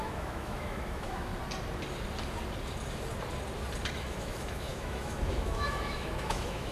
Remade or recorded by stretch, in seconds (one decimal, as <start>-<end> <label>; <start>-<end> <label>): 0.0-1.3 remade; 1.3-3.9 recorded; 3.9-6.7 remade